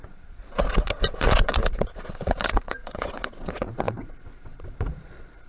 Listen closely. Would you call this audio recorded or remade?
remade